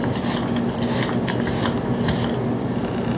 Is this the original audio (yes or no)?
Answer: yes